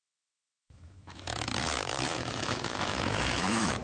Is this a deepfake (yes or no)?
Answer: yes